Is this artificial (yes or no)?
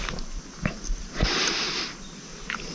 no